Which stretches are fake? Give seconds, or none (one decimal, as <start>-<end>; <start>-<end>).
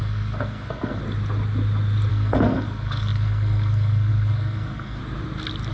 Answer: 0.0-1.0; 2.1-5.0